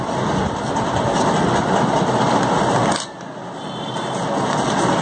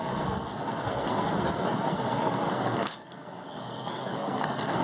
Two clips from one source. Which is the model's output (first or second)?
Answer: second